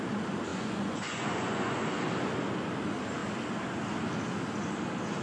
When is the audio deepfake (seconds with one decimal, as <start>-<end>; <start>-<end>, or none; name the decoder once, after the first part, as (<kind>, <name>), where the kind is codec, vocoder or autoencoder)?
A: 0.5-2.0 (vocoder, Vocos)